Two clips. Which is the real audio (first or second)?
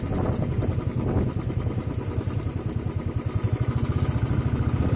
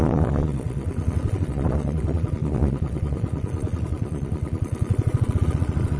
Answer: first